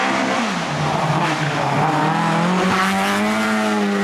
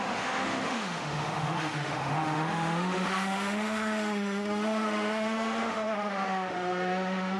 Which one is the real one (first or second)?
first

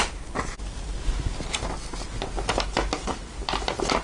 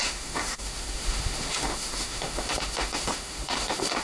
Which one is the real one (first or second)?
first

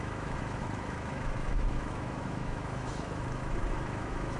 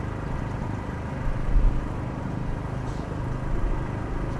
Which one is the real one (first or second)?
second